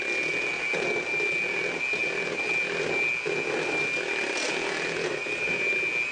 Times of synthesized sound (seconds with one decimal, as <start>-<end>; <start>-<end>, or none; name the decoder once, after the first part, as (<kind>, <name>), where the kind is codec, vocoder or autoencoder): none